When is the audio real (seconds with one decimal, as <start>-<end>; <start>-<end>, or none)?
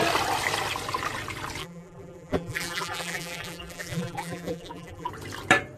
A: 0.0-1.6; 5.1-5.8